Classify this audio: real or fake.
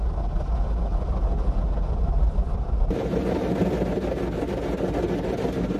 real